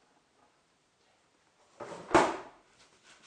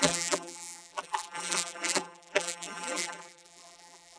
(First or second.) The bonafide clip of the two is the first